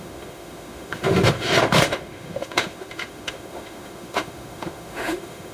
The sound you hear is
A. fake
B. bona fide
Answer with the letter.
A